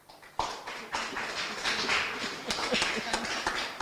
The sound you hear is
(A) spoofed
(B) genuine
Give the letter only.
B